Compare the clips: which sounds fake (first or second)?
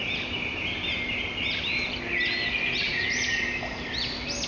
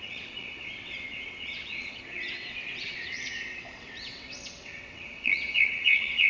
second